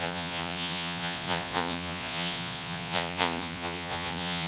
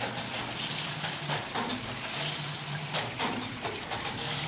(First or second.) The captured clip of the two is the second